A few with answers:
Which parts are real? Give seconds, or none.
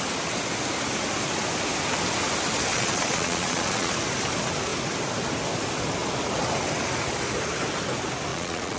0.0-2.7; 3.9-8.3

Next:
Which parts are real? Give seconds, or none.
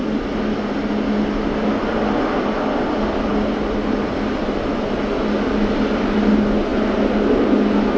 0.0-8.0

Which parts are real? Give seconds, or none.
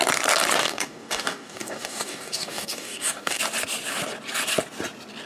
0.0-0.6; 3.4-5.3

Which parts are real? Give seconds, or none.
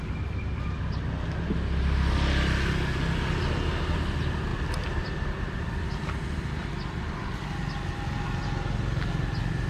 0.0-4.5; 6.1-9.7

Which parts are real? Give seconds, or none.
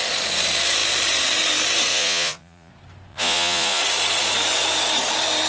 0.0-1.9; 2.7-3.1; 3.8-5.5